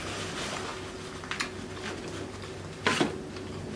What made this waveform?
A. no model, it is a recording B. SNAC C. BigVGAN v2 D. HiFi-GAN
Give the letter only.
A